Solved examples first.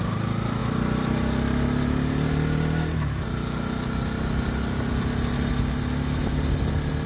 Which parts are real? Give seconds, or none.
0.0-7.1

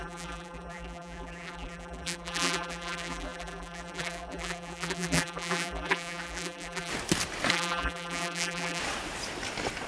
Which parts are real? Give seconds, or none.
6.9-7.5; 8.8-9.9

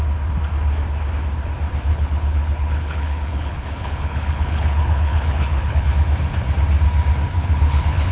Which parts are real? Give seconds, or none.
0.0-1.9; 5.9-7.4

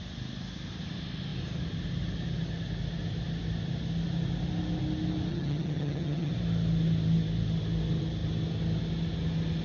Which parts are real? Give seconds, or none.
0.0-5.3; 6.3-9.6

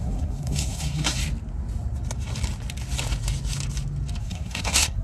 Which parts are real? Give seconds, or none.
1.2-4.2